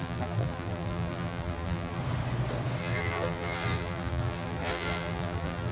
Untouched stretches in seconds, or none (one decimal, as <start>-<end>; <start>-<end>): 2.0-2.8